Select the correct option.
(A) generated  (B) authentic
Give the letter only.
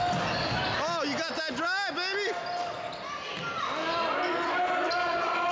B